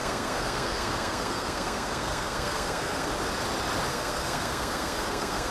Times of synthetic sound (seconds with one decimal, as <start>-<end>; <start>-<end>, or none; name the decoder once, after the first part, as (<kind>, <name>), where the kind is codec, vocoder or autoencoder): 0.0-3.1 (codec, SNAC); 3.9-5.5